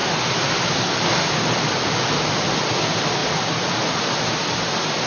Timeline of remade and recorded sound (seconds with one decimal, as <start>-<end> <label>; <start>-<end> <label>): 0.0-5.1 recorded